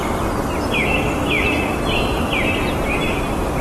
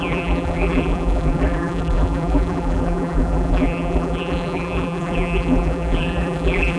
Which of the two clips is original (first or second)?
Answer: first